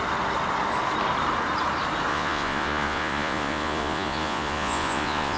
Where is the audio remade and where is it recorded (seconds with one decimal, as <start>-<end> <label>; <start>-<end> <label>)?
0.0-2.1 recorded; 2.1-5.4 remade

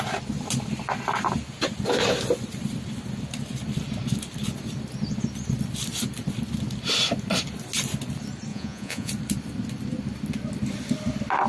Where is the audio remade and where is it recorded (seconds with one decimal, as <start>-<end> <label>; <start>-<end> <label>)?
0.0-8.5 recorded; 8.5-9.1 remade; 9.1-11.5 recorded

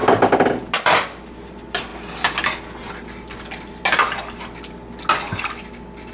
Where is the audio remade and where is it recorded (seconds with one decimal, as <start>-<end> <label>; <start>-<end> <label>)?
0.0-6.1 recorded

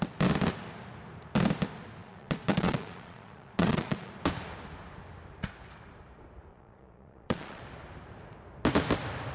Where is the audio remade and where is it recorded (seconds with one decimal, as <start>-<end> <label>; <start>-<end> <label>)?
0.0-2.0 recorded; 2.0-4.1 remade; 4.1-6.5 recorded; 6.5-7.6 remade; 7.6-9.3 recorded

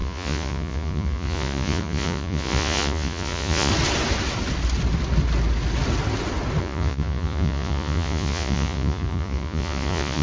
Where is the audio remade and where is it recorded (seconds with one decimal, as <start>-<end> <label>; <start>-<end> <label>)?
0.0-3.7 remade; 3.7-6.6 recorded; 6.6-10.2 remade

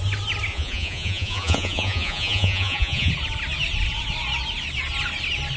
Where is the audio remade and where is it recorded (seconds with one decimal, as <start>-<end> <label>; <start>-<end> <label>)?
0.0-0.5 recorded; 0.5-3.1 remade; 3.1-5.6 recorded